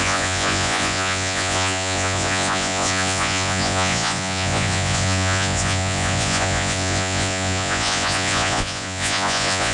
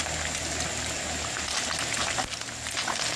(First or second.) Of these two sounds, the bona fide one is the second